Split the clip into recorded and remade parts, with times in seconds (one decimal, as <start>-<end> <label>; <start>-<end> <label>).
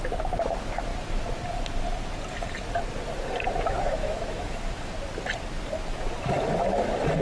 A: 0.0-4.0 recorded; 4.0-4.9 remade; 4.9-7.2 recorded